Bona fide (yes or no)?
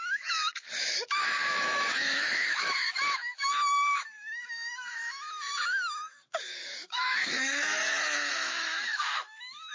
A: no